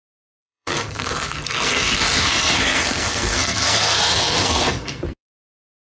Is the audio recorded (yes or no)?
no